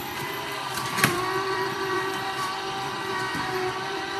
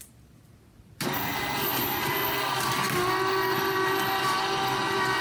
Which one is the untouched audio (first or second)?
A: second